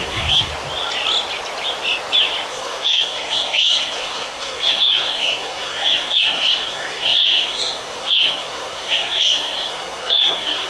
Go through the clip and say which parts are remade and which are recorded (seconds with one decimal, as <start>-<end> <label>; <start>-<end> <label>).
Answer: 0.0-0.5 remade; 0.5-2.5 recorded; 2.5-10.7 remade